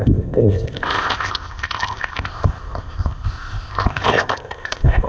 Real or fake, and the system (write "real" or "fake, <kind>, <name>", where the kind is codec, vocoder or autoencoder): fake, codec, ZipCodec